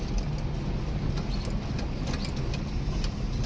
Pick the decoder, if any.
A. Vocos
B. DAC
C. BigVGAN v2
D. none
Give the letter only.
D